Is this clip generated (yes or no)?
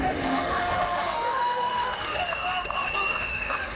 yes